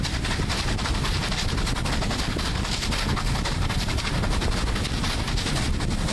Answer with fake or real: real